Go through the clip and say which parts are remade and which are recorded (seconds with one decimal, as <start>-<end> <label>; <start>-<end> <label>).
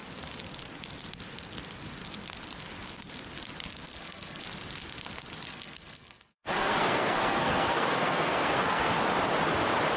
0.0-3.9 recorded; 3.9-4.4 remade; 4.4-5.5 recorded; 5.5-8.9 remade; 8.9-10.0 recorded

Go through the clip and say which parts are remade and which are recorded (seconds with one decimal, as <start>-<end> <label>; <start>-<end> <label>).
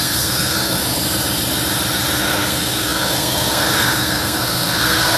0.0-0.8 remade; 0.8-2.2 recorded; 2.2-5.2 remade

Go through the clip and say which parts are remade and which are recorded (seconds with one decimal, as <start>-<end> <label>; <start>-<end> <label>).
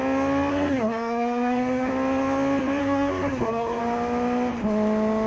0.0-0.5 recorded; 0.5-1.9 remade; 1.9-2.8 recorded; 2.8-3.8 remade; 3.8-5.3 recorded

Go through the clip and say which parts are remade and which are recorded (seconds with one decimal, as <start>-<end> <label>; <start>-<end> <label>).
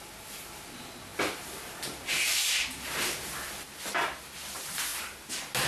0.0-5.7 recorded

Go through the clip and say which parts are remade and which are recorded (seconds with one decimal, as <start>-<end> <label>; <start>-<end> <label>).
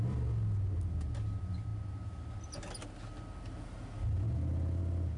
0.0-5.2 recorded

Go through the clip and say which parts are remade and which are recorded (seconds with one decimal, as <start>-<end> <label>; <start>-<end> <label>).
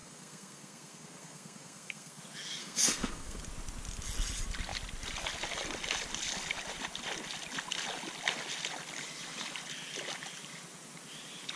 0.0-2.2 remade; 2.2-2.6 recorded; 2.6-3.4 remade; 3.4-11.6 recorded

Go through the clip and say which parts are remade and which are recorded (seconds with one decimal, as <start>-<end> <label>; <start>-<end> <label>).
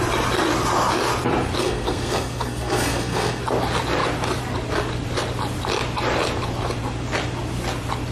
0.0-1.6 recorded; 1.6-3.4 remade; 3.4-8.1 recorded